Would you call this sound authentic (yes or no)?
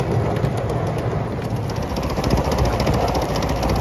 yes